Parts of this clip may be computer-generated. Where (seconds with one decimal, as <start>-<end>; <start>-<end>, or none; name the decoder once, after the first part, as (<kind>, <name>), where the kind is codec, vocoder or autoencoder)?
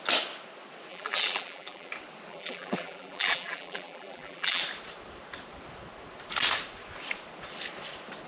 0.9-1.9 (vocoder, BigVGAN v2); 2.3-4.6